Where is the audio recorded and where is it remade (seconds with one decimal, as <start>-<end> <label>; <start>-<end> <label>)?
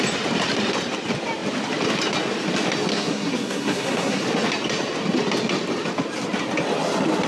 0.0-2.9 recorded; 2.9-4.2 remade; 4.2-7.3 recorded